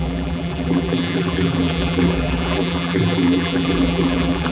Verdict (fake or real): fake